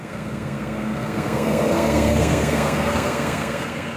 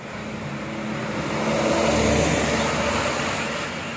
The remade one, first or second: first